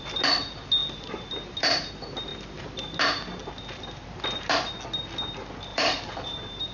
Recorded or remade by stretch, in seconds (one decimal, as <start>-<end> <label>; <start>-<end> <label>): 0.0-0.8 recorded; 0.8-1.9 remade; 1.9-5.7 recorded; 5.7-6.7 remade